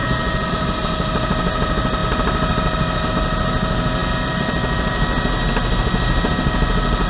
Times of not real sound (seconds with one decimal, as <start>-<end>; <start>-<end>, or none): none

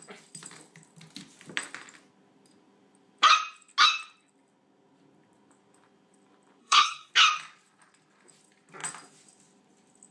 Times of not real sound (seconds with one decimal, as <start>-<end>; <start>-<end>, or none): 6.6-7.1

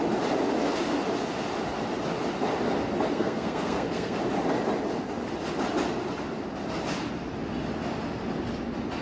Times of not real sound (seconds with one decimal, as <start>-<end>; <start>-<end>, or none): 3.1-4.2